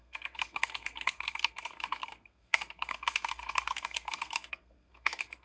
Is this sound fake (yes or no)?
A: yes